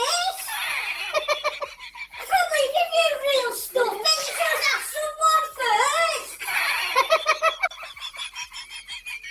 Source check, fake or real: real